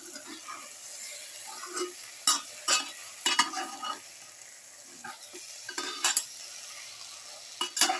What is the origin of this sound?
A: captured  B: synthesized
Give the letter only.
A